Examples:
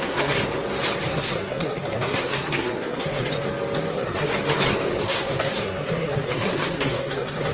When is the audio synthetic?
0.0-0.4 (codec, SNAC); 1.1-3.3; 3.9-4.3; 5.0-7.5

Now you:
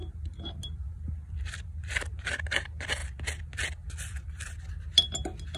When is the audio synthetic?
none

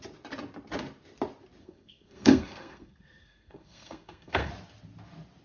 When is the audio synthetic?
1.6-4.5 (codec, SNAC)